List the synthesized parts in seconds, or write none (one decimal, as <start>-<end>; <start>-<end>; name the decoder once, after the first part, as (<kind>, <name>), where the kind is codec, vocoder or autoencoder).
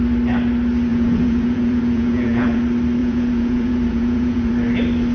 0.9-2.6 (vocoder, Vocos); 3.0-4.5